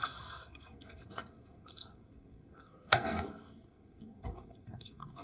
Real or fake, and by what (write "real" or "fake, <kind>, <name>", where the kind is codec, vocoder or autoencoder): fake, codec, SNAC